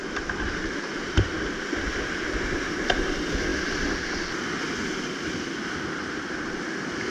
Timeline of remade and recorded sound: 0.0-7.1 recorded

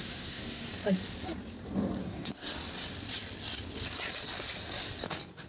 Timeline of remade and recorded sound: 0.0-0.7 remade; 0.7-2.0 recorded; 2.0-2.5 remade; 2.5-5.5 recorded

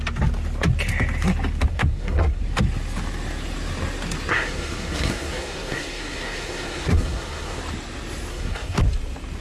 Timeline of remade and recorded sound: 0.0-1.7 recorded; 1.7-2.4 remade; 2.4-4.3 recorded; 4.3-7.6 remade; 7.6-8.3 recorded; 8.3-8.8 remade; 8.8-9.4 recorded